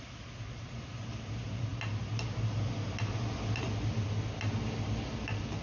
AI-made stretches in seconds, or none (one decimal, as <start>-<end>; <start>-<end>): none

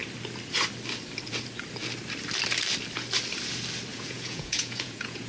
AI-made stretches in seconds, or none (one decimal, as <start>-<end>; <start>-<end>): 3.9-5.3